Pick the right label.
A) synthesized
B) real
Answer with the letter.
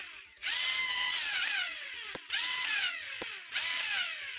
A